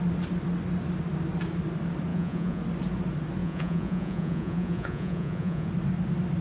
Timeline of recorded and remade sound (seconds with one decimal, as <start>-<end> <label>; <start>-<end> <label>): 0.0-2.1 recorded; 2.1-2.6 remade; 2.6-3.4 recorded; 3.4-5.7 remade; 5.7-6.4 recorded